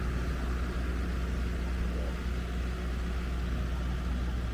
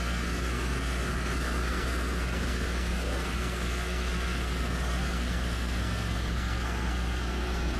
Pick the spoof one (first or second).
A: second